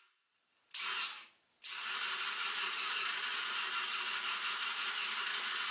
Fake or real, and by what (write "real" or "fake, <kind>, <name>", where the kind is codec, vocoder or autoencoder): real